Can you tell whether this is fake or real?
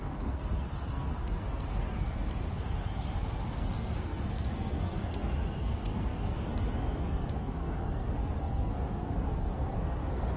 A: fake